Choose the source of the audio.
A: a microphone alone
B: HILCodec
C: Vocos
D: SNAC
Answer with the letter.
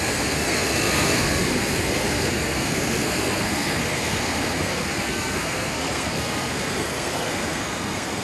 D